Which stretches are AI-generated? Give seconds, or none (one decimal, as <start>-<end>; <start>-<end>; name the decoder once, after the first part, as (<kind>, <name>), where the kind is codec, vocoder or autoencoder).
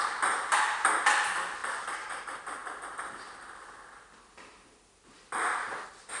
none